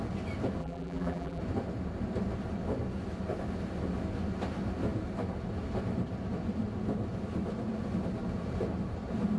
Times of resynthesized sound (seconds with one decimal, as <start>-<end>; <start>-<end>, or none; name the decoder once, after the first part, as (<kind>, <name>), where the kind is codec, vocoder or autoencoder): 0.6-1.4 (vocoder, BigVGAN v2)